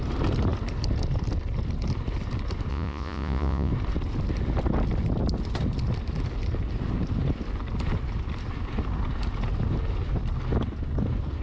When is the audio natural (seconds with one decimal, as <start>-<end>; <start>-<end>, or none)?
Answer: 0.0-2.7; 3.7-11.4